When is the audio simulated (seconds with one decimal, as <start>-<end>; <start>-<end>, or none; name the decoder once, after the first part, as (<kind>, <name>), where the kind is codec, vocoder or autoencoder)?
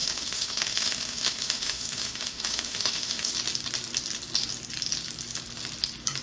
0.0-3.3 (autoencoder, DAC-VAE)